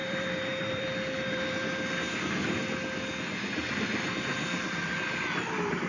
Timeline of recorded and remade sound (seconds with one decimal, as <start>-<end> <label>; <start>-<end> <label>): 0.0-2.2 remade; 2.2-3.6 recorded; 3.6-5.4 remade; 5.4-5.9 recorded